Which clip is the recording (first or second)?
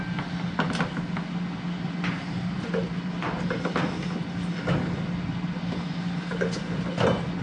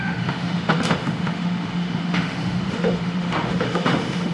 first